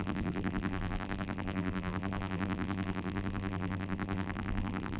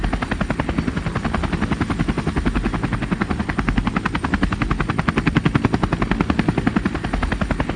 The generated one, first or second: first